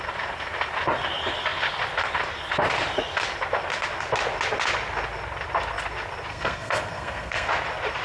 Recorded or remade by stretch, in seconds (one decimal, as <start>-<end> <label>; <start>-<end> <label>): 0.0-6.3 recorded; 6.3-7.5 remade; 7.5-8.0 recorded